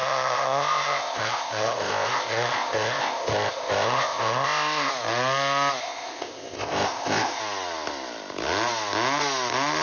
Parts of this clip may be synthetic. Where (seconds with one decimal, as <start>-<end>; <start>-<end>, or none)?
0.0-4.9; 5.8-7.4